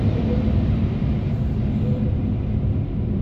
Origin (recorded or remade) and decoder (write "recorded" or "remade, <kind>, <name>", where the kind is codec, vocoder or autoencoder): remade, vocoder, BigVGAN v2